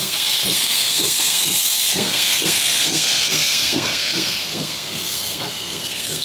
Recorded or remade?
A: remade